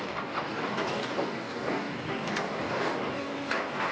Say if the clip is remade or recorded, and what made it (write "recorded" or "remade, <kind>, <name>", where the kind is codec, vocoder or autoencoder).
remade, codec, DAC